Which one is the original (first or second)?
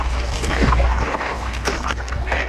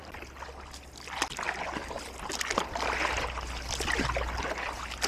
second